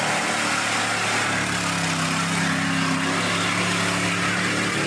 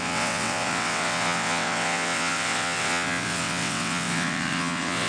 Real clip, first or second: first